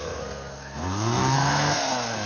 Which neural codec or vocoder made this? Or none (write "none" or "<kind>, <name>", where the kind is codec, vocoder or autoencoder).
codec, SNAC